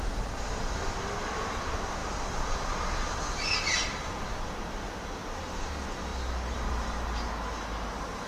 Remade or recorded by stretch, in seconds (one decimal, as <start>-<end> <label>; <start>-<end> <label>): 0.0-8.3 recorded